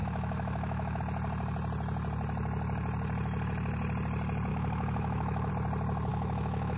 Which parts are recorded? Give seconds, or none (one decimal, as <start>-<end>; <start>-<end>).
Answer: 1.0-4.5; 5.5-6.1